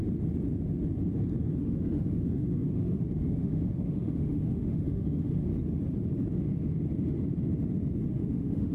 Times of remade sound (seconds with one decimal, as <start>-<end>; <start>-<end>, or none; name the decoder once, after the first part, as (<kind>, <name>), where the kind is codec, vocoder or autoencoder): 1.6-5.5 (autoencoder, DAC-VAE); 8.1-8.7